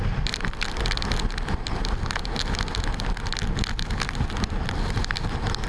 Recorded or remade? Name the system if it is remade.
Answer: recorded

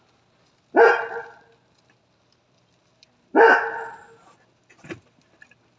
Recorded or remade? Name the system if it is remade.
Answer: recorded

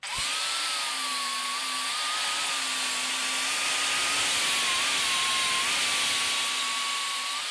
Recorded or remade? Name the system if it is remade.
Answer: recorded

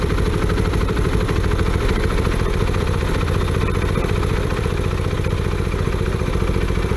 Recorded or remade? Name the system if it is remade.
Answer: remade, vocoder, BigVGAN v2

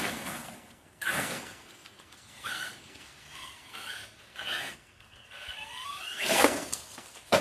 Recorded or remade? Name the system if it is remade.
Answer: remade, codec, SNAC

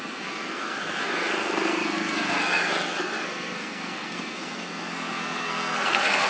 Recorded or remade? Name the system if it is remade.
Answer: remade, codec, SNAC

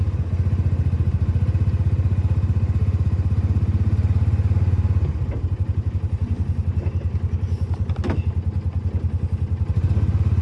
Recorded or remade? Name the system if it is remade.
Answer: recorded